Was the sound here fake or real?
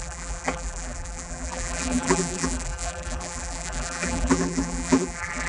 fake